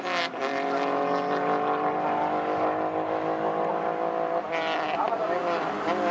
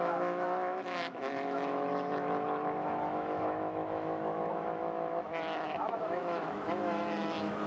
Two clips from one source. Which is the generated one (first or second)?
second